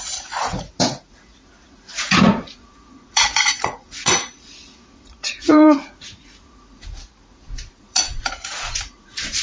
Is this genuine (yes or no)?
no